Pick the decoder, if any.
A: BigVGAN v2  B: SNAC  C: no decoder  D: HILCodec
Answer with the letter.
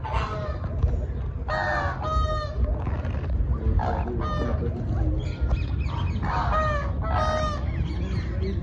C